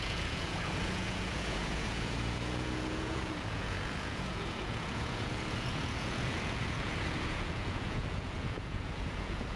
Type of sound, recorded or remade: remade